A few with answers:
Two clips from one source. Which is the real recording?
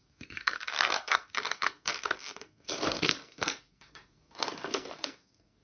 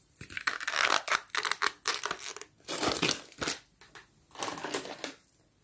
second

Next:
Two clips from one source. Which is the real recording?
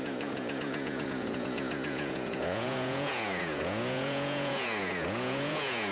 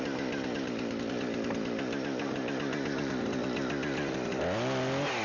second